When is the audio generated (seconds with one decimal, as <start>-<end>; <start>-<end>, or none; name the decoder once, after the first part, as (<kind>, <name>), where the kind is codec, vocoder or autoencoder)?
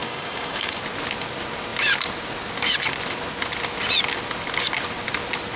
0.0-0.8 (codec, DAC)